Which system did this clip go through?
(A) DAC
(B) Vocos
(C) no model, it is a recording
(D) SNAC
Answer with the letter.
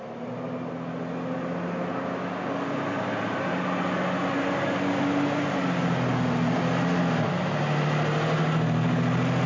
C